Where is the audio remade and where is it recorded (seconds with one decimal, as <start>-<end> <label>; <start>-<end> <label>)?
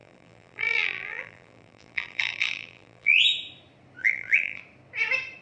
0.0-3.2 remade; 3.2-4.0 recorded; 4.0-4.6 remade; 4.6-5.4 recorded